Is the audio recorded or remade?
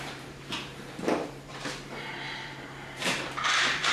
remade